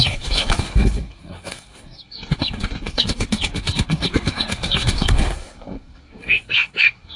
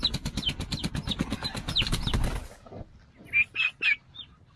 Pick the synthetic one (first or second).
first